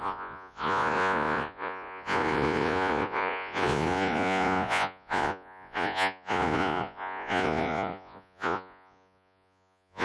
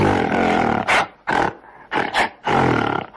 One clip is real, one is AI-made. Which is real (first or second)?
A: second